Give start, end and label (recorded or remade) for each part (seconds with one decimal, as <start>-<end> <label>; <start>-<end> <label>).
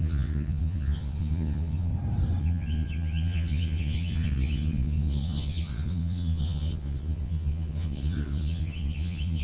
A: 0.0-1.9 remade; 1.9-2.4 recorded; 2.4-9.4 remade